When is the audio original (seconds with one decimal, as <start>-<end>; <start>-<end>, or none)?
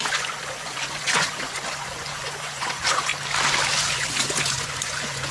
3.1-3.8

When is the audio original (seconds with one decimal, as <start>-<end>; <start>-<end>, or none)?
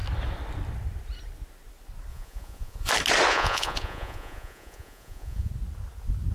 0.0-2.1; 2.9-3.3; 5.5-6.3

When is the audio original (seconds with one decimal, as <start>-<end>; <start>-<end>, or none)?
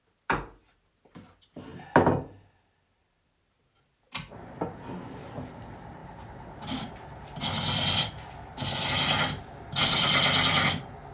0.0-11.1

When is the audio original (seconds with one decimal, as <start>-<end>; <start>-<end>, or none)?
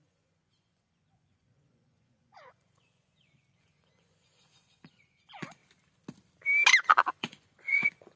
5.6-6.9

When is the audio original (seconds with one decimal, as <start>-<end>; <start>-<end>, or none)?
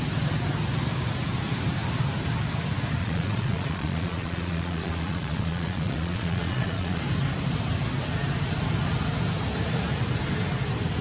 0.0-3.0; 7.0-11.0